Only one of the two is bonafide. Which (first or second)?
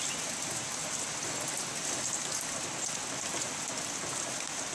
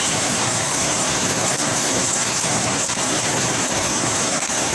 first